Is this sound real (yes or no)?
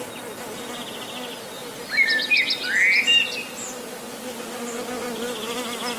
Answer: yes